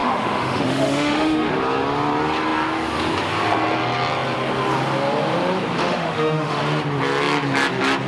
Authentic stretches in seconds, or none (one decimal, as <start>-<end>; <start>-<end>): 1.5-5.8; 6.6-8.1